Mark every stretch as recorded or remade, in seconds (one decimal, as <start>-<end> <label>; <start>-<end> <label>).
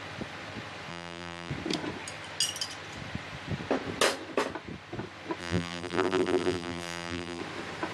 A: 0.0-0.9 recorded; 0.9-1.5 remade; 1.5-5.4 recorded; 5.4-7.4 remade; 7.4-7.9 recorded